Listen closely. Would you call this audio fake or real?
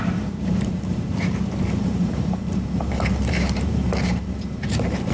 fake